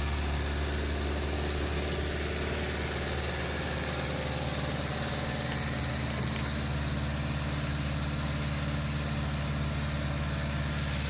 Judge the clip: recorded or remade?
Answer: recorded